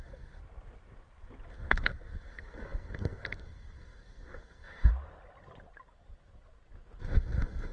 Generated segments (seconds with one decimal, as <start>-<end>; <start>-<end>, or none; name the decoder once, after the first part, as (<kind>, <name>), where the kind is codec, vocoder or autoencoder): 0.0-0.4 (codec, SNAC); 1.5-4.9; 7.0-7.7